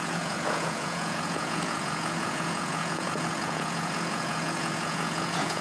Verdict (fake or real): fake